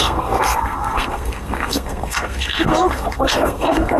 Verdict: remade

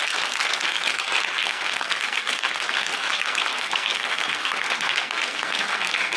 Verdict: remade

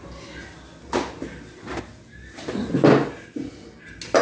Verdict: recorded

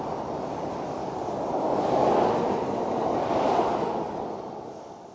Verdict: recorded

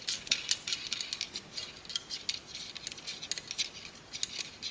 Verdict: recorded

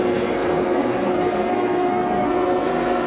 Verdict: remade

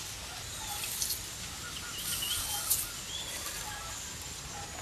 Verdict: recorded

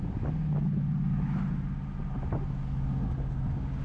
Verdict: recorded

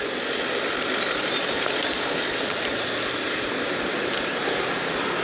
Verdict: recorded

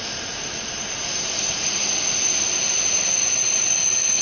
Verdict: recorded